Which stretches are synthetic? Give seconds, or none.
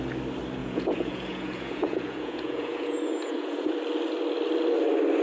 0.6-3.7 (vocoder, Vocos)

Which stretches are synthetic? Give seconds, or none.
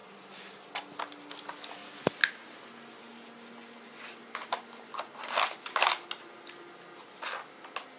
0.0-0.6 (vocoder, BigVGAN v2)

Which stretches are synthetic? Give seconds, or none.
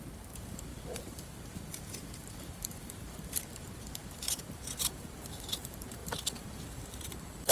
0.0-7.5 (vocoder, BigVGAN v2)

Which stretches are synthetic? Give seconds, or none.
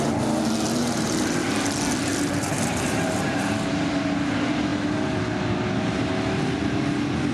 0.8-1.5 (vocoder, BigVGAN v2); 2.0-3.5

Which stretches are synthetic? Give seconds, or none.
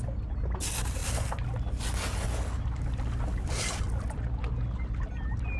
none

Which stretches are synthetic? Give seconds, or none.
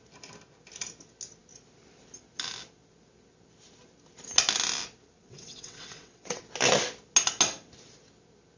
5.2-6.4 (vocoder, WaveNeXt)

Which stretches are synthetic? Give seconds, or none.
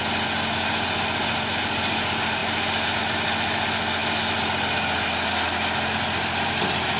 none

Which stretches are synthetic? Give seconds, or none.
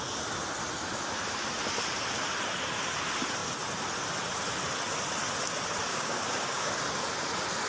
5.9-6.7 (codec, DAC)